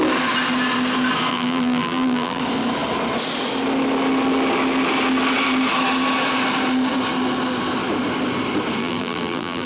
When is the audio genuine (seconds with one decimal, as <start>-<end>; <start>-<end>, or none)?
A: 0.0-1.3; 2.4-8.8